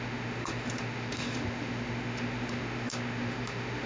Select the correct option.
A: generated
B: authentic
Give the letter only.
A